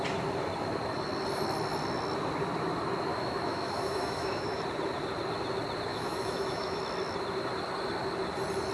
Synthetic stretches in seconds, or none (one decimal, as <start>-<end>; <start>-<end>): 3.1-4.6; 5.9-6.8

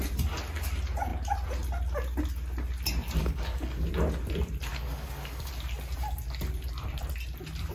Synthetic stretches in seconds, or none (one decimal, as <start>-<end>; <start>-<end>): 3.2-3.9; 4.7-5.5

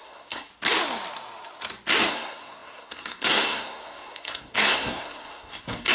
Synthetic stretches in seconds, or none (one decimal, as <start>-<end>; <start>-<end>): 0.0-0.5; 2.1-5.9

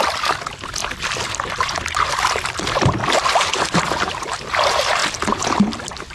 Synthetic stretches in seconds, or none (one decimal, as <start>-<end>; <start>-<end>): 0.8-1.3; 3.0-3.8; 5.0-6.1

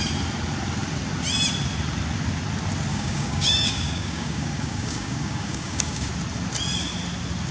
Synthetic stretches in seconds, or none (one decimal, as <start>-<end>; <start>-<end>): 2.9-6.1

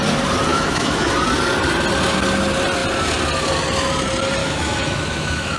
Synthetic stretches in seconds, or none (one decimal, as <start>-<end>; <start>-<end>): 0.5-1.1; 4.4-5.6

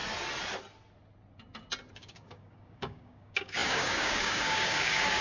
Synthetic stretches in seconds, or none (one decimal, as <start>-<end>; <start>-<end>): 1.9-5.2

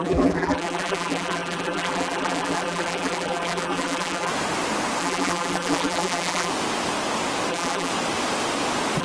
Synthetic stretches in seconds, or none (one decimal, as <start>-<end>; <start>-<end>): 0.0-4.3; 5.0-6.5; 7.5-7.9